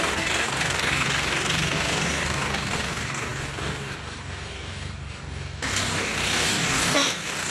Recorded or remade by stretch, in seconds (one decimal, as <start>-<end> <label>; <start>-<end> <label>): 0.0-7.5 remade